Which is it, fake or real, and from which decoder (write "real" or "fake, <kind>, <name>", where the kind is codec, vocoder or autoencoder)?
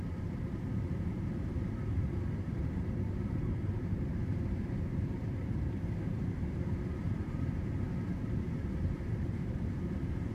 fake, vocoder, BigVGAN v2